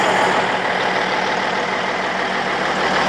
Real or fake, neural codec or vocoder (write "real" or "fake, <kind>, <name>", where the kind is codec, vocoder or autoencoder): real